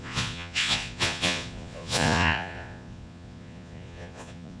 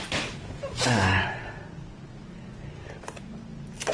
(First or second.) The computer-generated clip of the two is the first